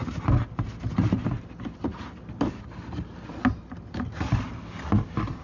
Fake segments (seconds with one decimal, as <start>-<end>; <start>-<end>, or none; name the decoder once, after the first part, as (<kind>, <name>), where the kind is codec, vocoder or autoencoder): none